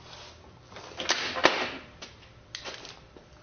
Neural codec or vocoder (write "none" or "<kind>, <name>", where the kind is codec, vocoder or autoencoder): none